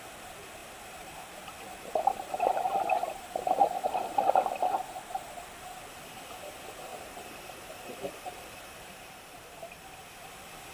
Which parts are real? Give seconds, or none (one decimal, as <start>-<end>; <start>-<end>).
0.0-6.9; 9.5-10.7